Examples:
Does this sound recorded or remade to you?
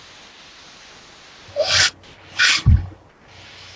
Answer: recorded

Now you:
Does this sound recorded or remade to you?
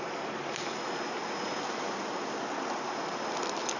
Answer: recorded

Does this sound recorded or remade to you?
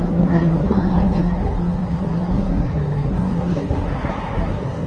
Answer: remade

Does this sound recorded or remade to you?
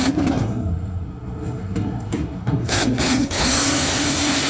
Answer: remade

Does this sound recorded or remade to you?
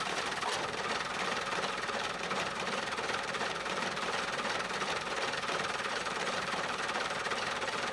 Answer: remade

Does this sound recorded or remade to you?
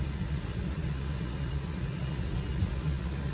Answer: remade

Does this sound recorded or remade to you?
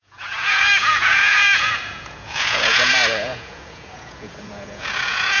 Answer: remade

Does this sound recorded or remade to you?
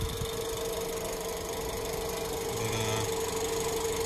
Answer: recorded